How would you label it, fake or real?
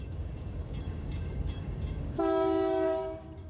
fake